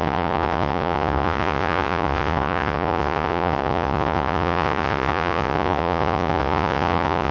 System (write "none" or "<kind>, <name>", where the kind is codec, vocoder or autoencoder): vocoder, Vocos